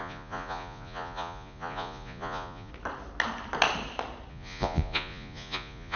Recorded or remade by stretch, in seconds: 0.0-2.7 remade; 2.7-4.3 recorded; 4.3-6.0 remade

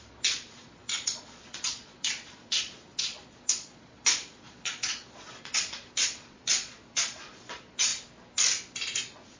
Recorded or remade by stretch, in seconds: 0.0-7.9 remade; 7.9-9.0 recorded; 9.0-9.4 remade

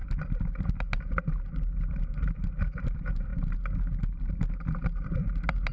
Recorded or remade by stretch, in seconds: 0.0-5.7 recorded

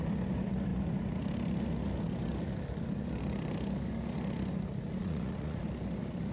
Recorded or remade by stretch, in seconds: 0.0-5.0 recorded; 5.0-5.6 remade; 5.6-6.3 recorded

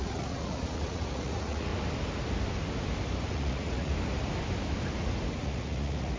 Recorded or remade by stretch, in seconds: 0.0-1.7 remade; 1.7-3.3 recorded; 3.3-3.9 remade; 3.9-5.4 recorded; 5.4-6.2 remade

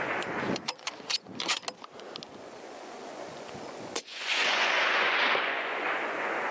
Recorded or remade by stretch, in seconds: 0.0-1.6 remade; 1.6-2.3 recorded; 2.3-6.5 remade

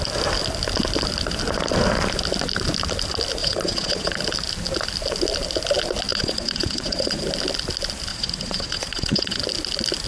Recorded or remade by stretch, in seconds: 0.0-3.4 recorded; 3.4-4.1 remade; 4.1-6.1 recorded; 6.1-7.2 remade; 7.2-8.1 recorded; 8.1-9.4 remade; 9.4-10.1 recorded